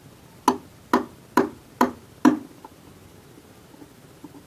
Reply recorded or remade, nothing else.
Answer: recorded